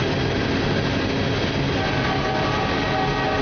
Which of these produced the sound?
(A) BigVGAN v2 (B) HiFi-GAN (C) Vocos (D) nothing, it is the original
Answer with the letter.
D